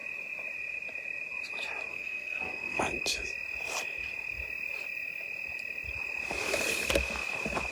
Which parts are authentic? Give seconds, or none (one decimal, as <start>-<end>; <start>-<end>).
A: 0.0-1.9; 2.8-7.7